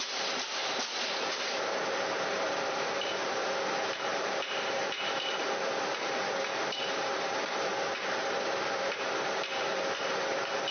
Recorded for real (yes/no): no